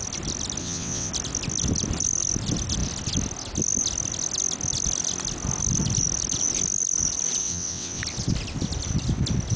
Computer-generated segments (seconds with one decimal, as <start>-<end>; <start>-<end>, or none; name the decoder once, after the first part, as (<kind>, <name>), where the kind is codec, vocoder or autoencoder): 0.6-1.1 (vocoder, WaveNeXt); 7.4-8.0